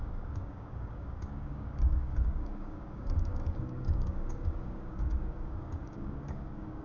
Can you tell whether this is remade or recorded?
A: remade